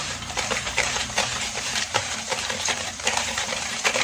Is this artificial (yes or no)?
yes